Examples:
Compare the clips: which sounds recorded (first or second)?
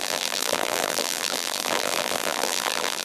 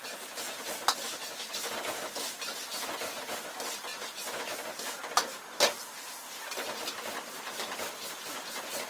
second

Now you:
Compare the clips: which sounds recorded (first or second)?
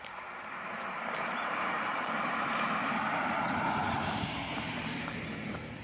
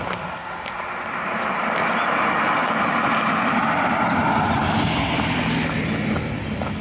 second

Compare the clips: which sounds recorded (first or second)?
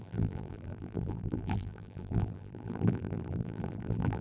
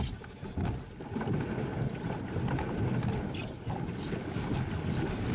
second